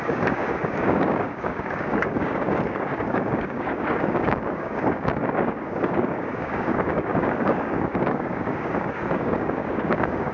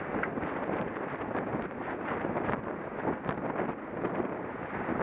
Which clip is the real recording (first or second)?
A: second